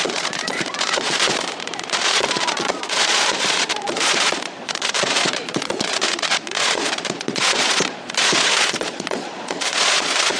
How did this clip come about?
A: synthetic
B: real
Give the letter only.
A